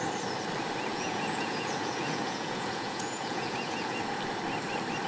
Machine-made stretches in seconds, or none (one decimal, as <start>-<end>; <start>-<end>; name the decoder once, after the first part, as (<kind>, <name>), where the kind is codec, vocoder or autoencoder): 0.9-4.0 (vocoder, Vocos)